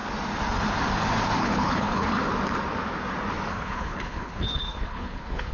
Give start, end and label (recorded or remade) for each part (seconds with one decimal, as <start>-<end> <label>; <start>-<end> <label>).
0.0-1.4 recorded; 1.4-2.2 remade; 2.2-3.5 recorded; 3.5-5.5 remade